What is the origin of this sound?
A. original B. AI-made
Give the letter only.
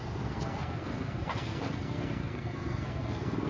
B